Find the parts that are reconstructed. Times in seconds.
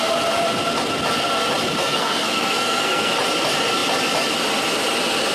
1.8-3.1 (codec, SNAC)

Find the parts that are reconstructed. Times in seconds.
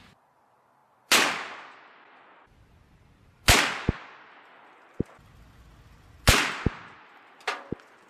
none